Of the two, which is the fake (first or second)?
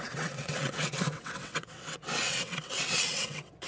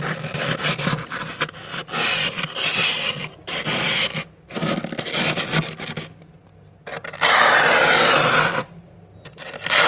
first